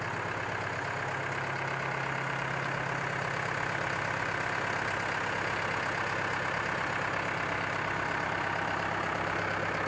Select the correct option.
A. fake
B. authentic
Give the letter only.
B